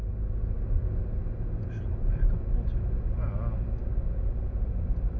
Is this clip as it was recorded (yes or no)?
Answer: yes